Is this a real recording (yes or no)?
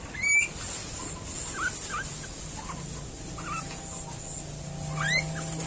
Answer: yes